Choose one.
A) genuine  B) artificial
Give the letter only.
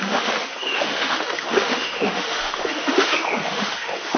B